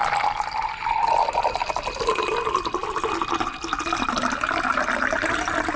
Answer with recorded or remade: recorded